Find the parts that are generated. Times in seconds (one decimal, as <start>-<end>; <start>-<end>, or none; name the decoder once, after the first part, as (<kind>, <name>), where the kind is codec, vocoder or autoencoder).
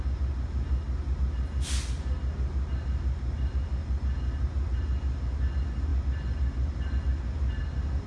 none